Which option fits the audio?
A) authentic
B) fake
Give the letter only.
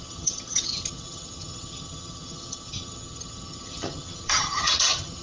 B